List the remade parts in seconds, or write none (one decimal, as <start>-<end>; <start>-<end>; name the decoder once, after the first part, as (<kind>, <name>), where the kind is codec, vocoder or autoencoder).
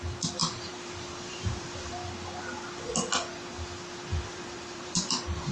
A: 0.4-0.9 (vocoder, BigVGAN v2); 1.3-1.9; 4.1-5.5